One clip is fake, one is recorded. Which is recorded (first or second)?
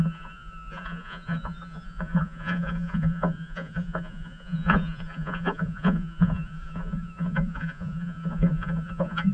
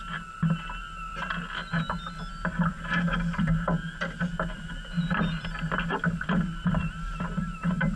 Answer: second